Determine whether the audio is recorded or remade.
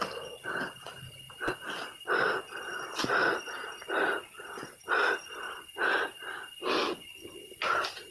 recorded